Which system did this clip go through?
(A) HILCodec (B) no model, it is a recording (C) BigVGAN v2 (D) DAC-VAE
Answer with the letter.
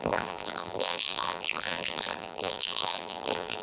C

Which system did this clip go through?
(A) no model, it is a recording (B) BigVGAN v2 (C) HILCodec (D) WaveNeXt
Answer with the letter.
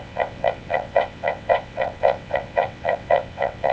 D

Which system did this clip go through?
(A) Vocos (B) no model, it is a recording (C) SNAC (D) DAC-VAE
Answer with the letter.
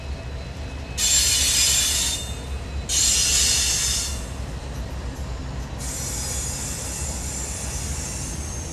B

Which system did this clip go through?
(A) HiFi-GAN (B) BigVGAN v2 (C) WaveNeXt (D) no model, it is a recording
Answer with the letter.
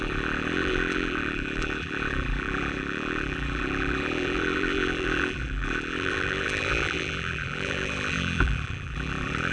B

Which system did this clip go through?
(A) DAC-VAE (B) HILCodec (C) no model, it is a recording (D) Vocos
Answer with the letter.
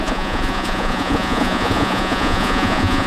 D